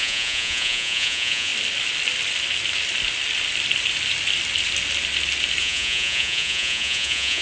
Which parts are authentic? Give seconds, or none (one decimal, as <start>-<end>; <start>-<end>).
1.5-5.6